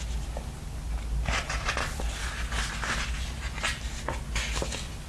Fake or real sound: real